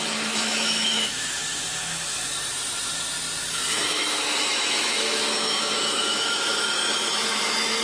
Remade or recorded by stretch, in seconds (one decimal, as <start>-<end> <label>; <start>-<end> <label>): 0.0-2.5 remade; 2.5-3.4 recorded; 3.4-7.8 remade